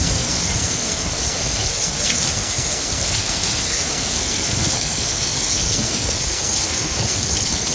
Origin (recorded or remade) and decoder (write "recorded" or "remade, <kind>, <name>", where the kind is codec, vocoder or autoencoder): remade, codec, SNAC